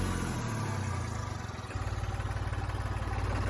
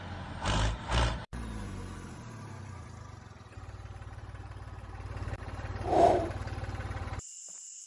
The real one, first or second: first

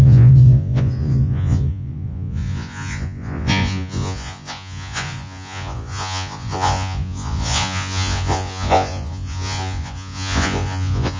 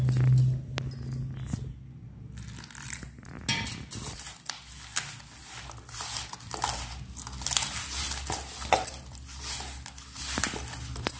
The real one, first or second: second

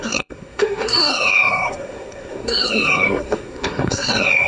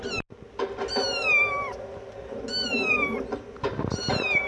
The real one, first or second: second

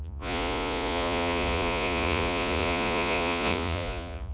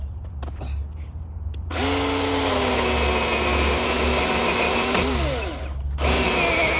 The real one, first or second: second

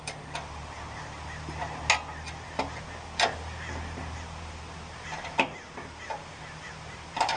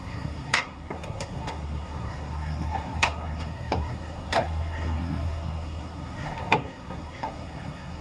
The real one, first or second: first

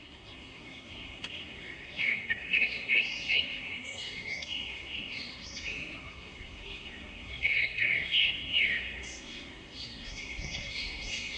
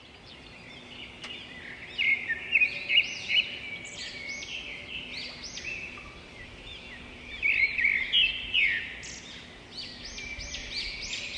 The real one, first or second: second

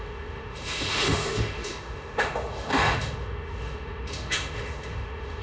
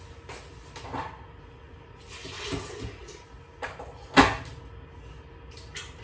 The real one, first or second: second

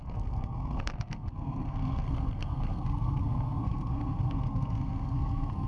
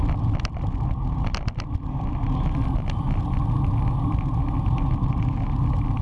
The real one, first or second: second